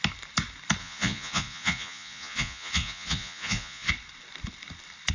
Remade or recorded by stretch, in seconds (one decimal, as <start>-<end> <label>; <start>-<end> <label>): 0.0-0.8 recorded; 0.8-3.9 remade; 3.9-5.1 recorded